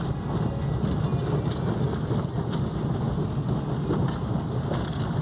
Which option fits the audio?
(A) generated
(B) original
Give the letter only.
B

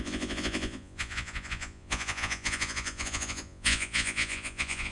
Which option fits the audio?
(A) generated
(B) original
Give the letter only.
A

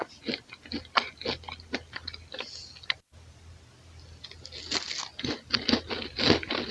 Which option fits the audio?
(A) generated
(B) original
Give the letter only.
B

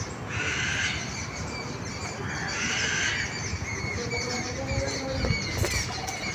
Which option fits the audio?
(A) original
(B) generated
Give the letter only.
A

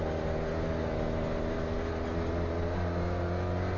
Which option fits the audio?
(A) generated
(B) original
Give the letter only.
B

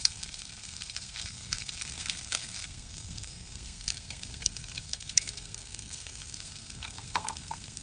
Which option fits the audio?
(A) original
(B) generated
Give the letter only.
B